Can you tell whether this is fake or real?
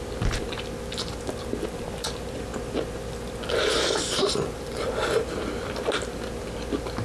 real